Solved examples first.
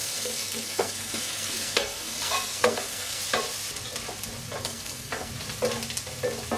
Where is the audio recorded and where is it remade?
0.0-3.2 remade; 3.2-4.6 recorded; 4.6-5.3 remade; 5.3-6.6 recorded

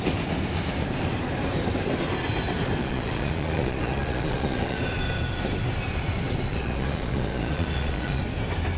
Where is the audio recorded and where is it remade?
0.0-2.8 recorded; 2.8-4.8 remade; 4.8-6.5 recorded; 6.5-8.2 remade; 8.2-8.8 recorded

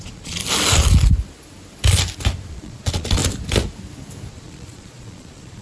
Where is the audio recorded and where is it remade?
0.0-0.4 remade; 0.4-2.5 recorded; 2.5-3.2 remade; 3.2-4.3 recorded; 4.3-5.6 remade

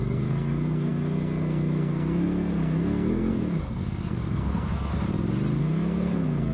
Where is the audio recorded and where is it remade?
0.0-4.9 remade; 4.9-5.6 recorded; 5.6-6.5 remade

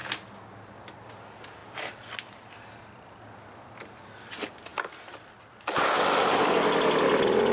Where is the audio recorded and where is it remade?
0.0-1.6 recorded; 1.6-3.2 remade; 3.2-4.7 recorded; 4.7-6.0 remade; 6.0-7.5 recorded

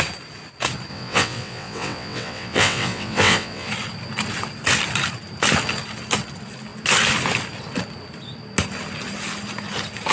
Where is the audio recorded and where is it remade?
0.0-0.9 recorded; 0.9-3.7 remade; 3.7-10.1 recorded

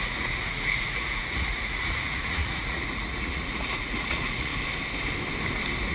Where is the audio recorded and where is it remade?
0.0-4.5 remade; 4.5-5.9 recorded

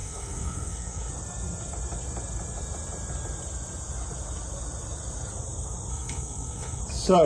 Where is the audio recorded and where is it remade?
0.0-1.1 remade; 1.1-5.9 recorded; 5.9-6.8 remade; 6.8-7.3 recorded